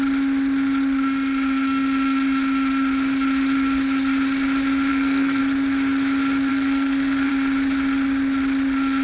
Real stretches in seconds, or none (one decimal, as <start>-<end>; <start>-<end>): 0.0-4.9; 5.4-6.5; 7.3-9.0